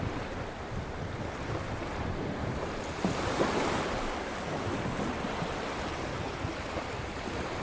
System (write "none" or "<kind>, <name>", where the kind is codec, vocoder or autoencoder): none